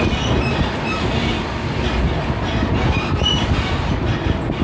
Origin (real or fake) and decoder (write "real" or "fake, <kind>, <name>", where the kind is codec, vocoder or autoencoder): real